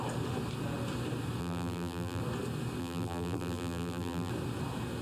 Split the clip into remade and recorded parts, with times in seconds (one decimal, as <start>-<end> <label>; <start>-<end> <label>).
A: 0.0-1.4 recorded; 1.4-2.2 remade; 2.2-2.8 recorded; 2.8-4.3 remade; 4.3-5.0 recorded